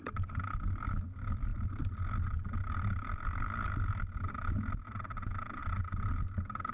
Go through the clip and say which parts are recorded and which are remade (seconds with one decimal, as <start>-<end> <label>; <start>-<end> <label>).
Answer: 0.0-6.7 recorded